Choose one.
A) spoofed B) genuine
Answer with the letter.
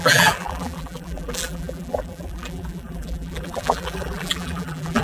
A